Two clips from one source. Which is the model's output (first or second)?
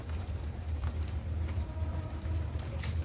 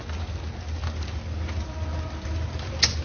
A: first